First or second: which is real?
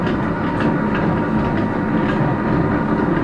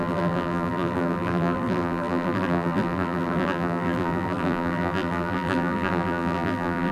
first